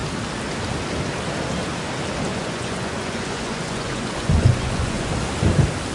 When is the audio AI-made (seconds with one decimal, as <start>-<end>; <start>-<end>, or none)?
2.3-5.1